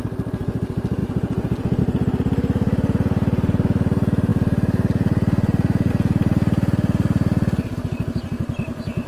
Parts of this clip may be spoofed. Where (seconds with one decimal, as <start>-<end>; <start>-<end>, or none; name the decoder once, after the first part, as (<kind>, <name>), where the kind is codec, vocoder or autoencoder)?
none